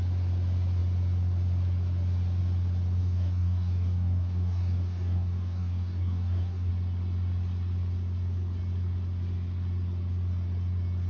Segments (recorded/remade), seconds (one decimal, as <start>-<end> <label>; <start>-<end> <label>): 0.0-3.0 recorded; 3.0-6.7 remade; 6.7-11.1 recorded